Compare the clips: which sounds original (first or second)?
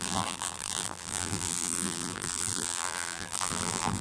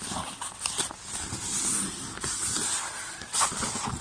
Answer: second